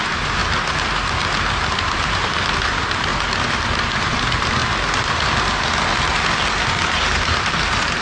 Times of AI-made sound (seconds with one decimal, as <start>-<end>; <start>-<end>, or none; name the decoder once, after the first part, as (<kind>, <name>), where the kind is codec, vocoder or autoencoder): 0.0-0.4 (vocoder, BigVGAN v2); 1.8-3.1; 4.0-4.6; 6.7-8.0